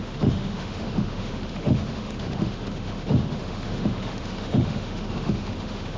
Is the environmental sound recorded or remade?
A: remade